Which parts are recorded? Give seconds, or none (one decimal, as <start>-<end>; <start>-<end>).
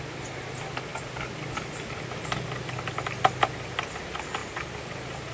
0.0-5.3